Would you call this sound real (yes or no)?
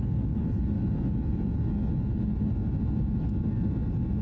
yes